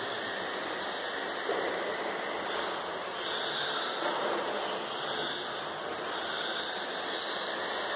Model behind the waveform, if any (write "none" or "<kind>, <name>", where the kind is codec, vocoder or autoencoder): none